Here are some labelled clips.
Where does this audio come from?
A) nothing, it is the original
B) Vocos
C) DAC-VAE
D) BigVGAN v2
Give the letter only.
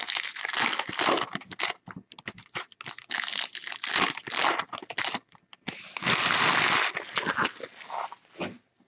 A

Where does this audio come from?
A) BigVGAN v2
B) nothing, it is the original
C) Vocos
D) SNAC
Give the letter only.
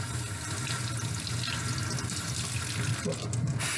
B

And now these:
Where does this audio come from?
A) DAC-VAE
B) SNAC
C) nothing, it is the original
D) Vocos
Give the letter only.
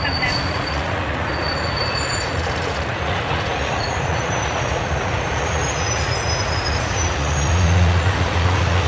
D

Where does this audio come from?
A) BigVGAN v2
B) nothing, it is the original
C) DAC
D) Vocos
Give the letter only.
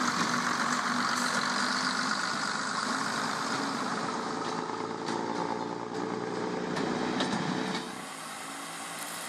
B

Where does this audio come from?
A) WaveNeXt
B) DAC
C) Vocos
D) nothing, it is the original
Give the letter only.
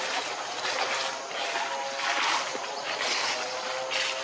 D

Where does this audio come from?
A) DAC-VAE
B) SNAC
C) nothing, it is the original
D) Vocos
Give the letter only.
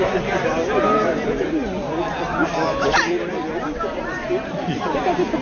C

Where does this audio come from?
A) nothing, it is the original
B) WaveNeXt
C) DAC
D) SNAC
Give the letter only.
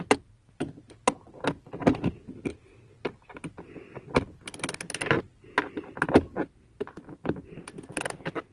A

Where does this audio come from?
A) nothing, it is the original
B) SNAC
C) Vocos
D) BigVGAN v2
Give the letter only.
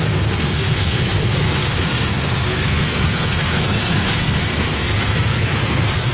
B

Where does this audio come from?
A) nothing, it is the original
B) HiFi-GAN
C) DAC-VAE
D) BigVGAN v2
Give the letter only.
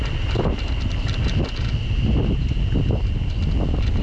A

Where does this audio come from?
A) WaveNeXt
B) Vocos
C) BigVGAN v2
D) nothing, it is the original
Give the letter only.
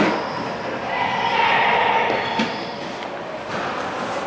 D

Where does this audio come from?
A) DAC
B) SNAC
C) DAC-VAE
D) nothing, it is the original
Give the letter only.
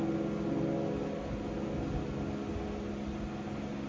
D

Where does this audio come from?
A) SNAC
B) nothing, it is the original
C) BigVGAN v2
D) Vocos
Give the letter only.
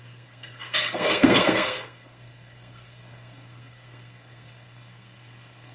A